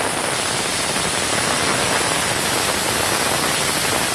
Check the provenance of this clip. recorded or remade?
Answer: recorded